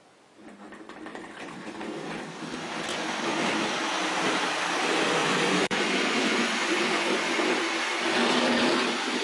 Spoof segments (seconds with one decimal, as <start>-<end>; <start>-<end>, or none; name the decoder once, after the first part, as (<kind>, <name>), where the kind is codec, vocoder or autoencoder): 1.1-2.2 (vocoder, Vocos); 2.9-3.4; 5.2-7.6